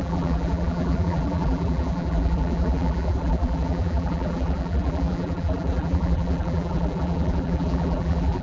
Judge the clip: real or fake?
fake